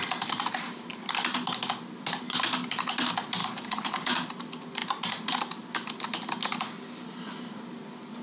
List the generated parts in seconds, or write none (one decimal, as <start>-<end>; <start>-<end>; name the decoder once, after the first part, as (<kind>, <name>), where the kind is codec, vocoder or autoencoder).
3.4-4.3 (codec, DAC)